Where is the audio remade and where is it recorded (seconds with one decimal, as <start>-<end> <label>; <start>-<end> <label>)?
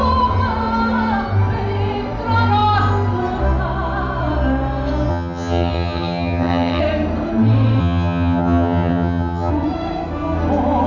0.0-5.1 recorded; 5.1-6.8 remade; 6.8-7.8 recorded; 7.8-9.5 remade; 9.5-10.9 recorded